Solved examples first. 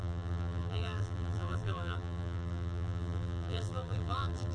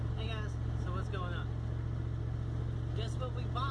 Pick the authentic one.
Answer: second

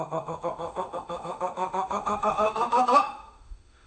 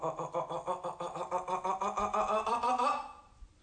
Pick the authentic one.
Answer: second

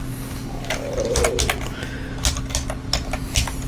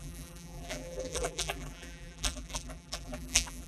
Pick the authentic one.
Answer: first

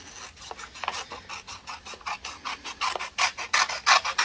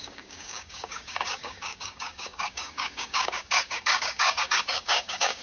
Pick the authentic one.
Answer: first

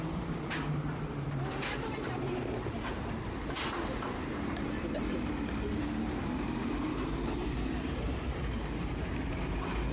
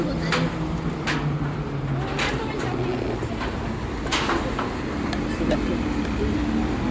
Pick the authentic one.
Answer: second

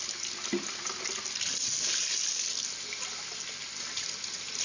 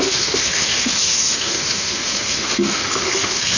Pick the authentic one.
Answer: first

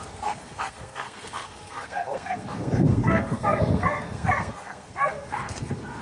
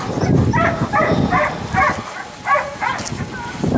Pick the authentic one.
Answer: second